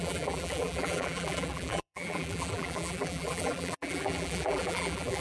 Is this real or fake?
fake